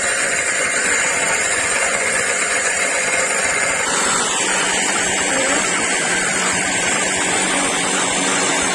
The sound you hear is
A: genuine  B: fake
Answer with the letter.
B